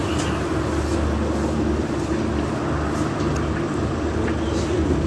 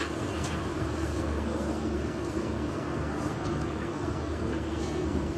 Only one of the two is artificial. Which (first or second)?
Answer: second